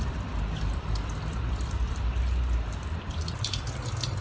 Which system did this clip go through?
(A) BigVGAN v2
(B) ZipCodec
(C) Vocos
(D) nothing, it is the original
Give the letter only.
A